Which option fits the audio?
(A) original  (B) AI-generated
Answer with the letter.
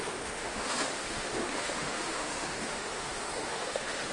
B